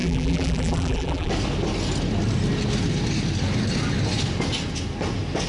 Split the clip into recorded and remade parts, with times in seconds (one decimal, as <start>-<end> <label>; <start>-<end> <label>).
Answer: 0.0-1.3 remade; 1.3-5.5 recorded

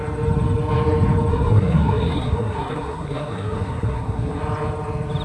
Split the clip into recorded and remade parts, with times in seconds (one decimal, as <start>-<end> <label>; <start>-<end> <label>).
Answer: 0.0-1.3 recorded; 1.3-4.4 remade; 4.4-5.2 recorded

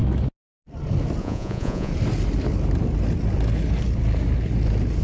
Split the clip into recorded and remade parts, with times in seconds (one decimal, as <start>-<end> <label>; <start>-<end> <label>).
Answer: 0.0-1.2 recorded; 1.2-1.9 remade; 1.9-5.0 recorded

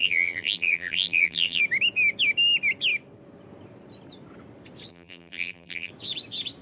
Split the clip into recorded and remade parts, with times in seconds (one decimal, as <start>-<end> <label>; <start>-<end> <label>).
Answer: 0.0-1.6 remade; 1.6-4.9 recorded; 4.9-5.9 remade; 5.9-6.6 recorded

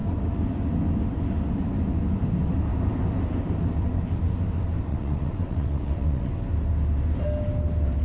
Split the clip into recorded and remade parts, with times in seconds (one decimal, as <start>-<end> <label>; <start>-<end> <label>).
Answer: 0.0-4.9 recorded; 4.9-6.3 remade; 6.3-8.0 recorded

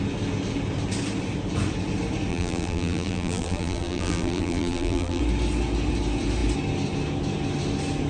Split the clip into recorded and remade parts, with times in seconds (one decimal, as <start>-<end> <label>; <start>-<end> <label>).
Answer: 0.0-2.3 recorded; 2.3-5.2 remade; 5.2-8.1 recorded

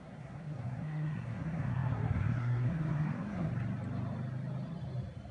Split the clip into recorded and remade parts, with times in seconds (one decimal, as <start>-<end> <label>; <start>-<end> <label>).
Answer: 0.0-3.5 remade; 3.5-5.3 recorded

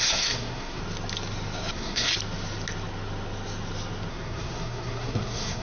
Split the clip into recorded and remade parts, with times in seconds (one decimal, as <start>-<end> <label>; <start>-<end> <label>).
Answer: 0.0-0.8 remade; 0.8-1.7 recorded; 1.7-2.1 remade; 2.1-4.1 recorded; 4.1-5.6 remade